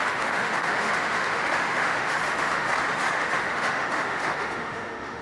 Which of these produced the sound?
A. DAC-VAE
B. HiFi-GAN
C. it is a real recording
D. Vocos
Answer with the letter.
A